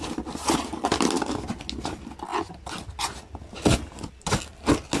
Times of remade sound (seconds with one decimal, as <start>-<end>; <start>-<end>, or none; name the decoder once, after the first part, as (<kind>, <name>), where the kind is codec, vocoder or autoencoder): none